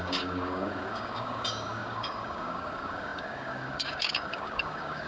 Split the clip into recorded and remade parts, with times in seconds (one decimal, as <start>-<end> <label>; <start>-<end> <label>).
0.0-5.1 remade